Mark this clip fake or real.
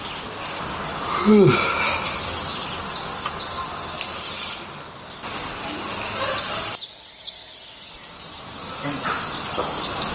real